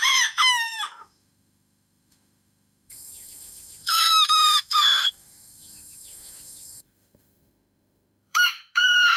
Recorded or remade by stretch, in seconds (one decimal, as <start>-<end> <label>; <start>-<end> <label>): 0.0-9.2 remade